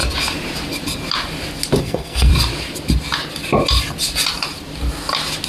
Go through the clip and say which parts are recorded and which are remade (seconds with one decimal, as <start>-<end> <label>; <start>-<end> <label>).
0.0-1.8 recorded; 1.8-2.3 remade; 2.3-5.5 recorded